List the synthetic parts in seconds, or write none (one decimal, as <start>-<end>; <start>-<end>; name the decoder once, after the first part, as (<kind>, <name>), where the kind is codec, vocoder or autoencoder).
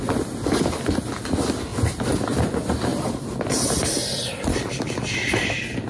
none